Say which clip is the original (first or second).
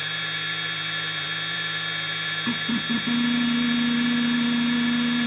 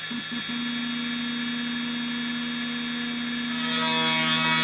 second